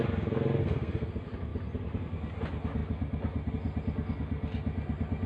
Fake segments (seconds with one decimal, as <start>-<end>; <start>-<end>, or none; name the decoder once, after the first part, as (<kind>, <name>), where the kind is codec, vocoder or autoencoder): 0.6-1.1 (codec, SNAC)